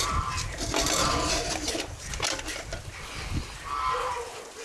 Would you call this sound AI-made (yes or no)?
no